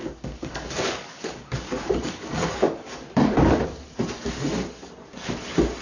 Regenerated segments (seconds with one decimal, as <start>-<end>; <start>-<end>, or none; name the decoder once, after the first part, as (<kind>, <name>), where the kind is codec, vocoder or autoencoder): 0.0-3.5 (codec, DAC)